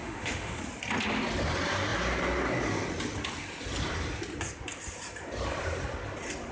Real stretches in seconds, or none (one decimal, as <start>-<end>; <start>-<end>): 0.6-6.5